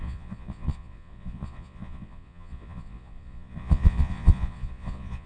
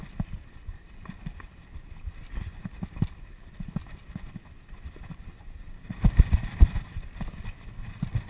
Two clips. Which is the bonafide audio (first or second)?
second